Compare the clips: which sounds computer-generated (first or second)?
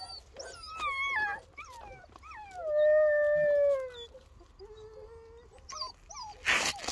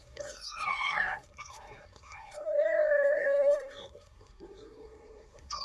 second